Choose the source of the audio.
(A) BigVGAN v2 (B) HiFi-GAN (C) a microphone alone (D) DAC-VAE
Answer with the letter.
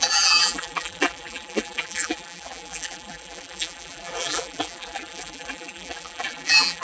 A